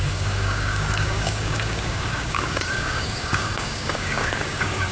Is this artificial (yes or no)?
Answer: yes